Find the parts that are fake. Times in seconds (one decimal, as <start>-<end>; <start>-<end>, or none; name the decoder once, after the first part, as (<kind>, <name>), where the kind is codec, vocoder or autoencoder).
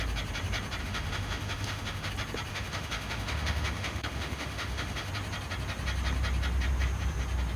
0.8-2.1 (autoencoder, DAC-VAE); 2.5-5.1